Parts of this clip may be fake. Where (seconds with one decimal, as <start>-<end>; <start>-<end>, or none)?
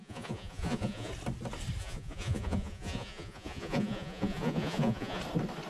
0.0-1.1; 1.8-5.2